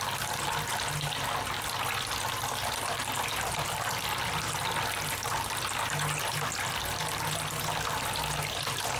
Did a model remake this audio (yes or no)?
no